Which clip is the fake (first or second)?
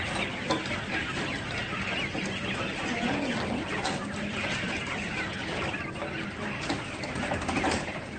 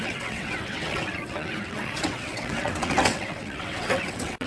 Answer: second